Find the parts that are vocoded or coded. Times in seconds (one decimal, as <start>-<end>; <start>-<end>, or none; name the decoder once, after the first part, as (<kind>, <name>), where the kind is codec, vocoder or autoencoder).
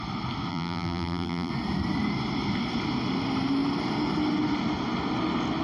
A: 0.5-1.5 (vocoder, BigVGAN v2)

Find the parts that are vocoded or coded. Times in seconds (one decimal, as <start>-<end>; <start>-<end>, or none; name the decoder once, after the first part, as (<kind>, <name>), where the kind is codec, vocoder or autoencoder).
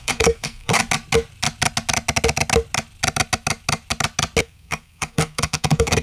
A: 0.0-0.8 (codec, SNAC); 4.4-6.0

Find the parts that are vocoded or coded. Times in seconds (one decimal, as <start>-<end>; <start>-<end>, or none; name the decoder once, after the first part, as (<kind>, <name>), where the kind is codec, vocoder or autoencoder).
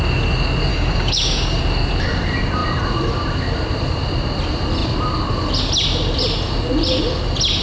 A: 0.7-1.6 (codec, DAC)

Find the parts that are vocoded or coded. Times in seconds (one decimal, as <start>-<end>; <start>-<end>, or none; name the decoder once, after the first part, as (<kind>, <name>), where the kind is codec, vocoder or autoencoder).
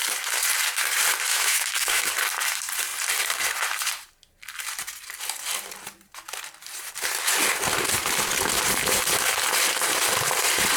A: 1.3-2.1 (autoencoder, DAC-VAE)